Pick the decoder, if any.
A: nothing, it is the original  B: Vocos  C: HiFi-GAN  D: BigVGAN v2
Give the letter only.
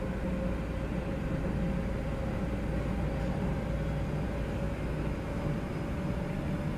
A